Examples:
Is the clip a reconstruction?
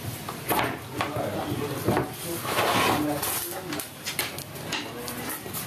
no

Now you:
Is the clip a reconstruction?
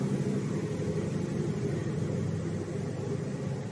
no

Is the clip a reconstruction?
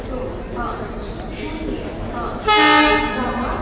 no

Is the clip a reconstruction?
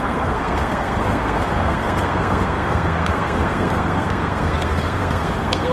yes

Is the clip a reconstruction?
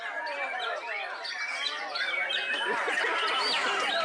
no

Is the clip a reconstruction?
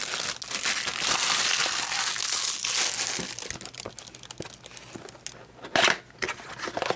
no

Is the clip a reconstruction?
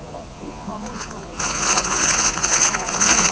yes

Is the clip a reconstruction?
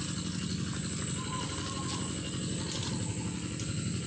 no